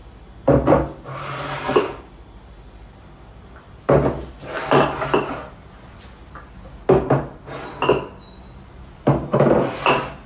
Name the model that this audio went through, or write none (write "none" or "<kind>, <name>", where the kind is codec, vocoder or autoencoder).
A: none